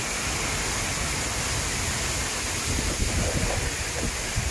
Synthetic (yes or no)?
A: no